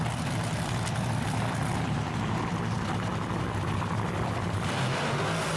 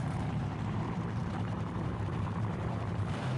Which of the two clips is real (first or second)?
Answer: first